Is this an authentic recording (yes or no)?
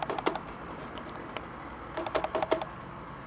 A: yes